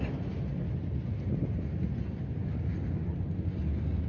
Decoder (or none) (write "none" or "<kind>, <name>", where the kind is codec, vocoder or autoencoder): none